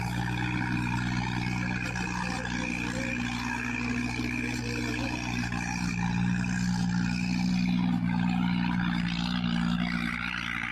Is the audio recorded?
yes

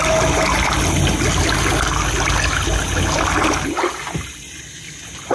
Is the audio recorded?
yes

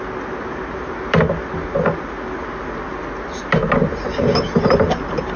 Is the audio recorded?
yes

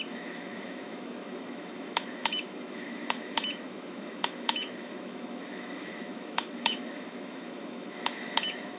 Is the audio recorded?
no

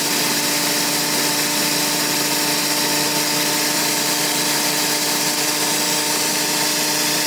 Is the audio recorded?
yes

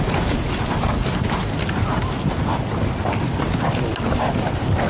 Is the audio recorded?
yes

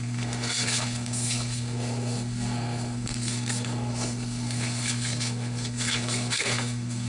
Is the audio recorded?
no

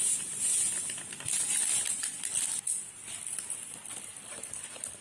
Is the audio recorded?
yes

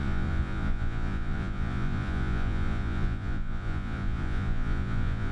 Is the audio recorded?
no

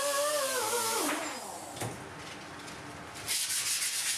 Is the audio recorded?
yes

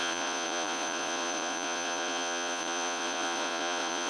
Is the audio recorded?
no